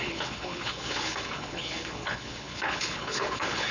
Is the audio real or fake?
fake